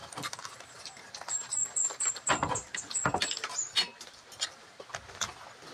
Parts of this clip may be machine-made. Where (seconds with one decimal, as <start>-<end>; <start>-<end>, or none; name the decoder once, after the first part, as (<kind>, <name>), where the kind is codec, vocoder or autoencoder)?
0.0-1.1 (vocoder, BigVGAN v2); 3.9-4.8